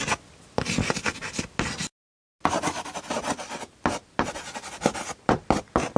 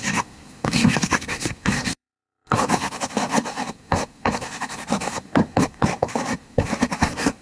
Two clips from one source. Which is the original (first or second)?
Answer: first